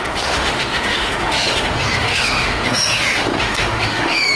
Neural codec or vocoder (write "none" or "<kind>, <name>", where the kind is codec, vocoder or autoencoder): autoencoder, DAC-VAE